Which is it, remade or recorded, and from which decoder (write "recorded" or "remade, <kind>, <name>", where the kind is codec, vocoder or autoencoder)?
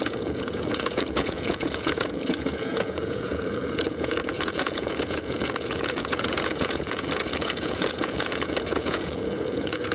remade, vocoder, Vocos